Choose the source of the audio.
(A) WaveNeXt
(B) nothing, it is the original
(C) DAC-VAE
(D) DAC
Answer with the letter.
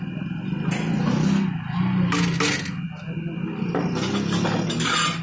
B